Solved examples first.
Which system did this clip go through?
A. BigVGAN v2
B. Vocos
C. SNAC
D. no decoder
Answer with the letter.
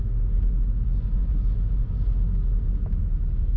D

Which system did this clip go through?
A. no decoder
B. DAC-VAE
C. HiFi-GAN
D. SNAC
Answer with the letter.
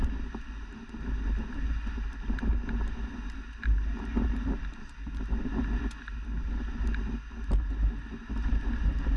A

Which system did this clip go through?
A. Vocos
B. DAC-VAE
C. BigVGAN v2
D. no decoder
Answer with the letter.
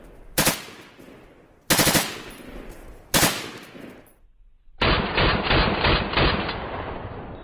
C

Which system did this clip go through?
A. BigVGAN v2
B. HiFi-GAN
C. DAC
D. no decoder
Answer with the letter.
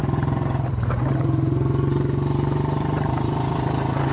A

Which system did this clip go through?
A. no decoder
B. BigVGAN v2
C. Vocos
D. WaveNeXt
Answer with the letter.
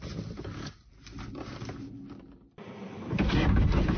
A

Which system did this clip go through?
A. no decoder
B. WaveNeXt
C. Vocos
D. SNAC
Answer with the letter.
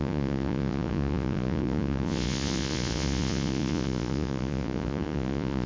C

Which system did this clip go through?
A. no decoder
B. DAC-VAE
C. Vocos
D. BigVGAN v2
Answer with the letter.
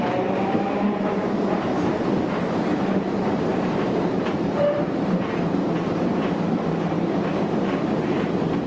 D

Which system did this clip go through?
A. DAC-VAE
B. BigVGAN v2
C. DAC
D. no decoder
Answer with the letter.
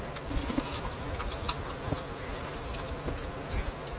D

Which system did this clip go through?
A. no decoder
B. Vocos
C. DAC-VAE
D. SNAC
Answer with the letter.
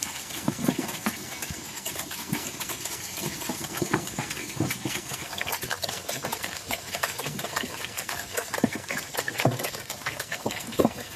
D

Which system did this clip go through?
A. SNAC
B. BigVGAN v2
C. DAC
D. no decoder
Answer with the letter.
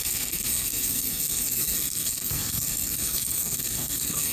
A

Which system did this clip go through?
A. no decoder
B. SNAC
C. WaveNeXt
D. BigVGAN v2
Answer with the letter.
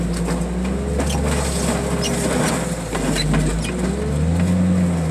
A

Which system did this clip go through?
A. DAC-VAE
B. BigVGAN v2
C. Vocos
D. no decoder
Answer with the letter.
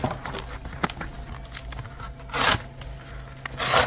D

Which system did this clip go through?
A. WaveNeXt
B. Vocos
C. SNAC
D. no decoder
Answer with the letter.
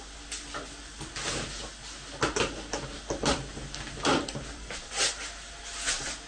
D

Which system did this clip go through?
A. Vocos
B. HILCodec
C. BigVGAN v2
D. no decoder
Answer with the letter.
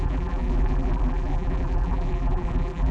C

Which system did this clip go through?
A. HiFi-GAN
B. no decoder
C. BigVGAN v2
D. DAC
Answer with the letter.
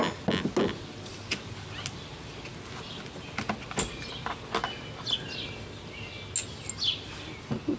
B